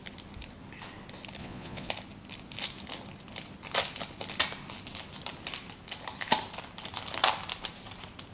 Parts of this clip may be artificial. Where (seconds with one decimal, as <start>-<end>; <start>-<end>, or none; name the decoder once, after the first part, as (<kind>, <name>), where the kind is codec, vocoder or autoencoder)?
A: 1.4-1.9 (vocoder, Vocos)